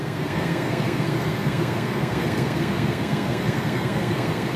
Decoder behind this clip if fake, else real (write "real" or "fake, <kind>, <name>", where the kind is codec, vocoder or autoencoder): fake, codec, SNAC